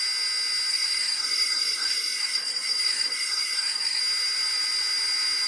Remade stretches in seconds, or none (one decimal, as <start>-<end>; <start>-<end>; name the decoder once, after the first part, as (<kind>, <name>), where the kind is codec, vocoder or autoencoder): 0.7-4.0 (codec, SNAC)